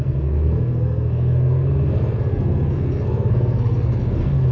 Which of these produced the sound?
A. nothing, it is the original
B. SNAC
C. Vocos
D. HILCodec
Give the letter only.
B